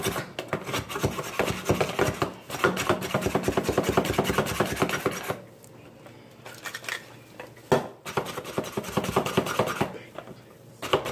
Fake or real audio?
real